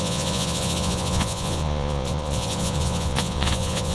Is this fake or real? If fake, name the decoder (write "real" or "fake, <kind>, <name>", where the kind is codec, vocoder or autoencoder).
fake, vocoder, Vocos